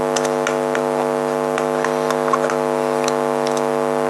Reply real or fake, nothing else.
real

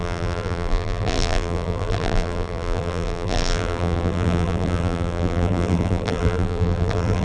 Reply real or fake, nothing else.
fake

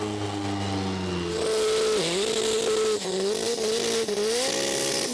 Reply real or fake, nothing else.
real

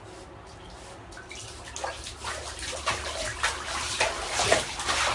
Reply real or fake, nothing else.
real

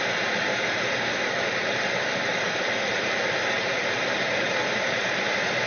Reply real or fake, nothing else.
fake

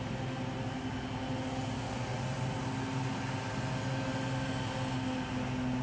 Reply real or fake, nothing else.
real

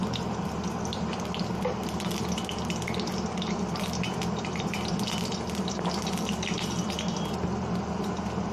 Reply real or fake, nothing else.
fake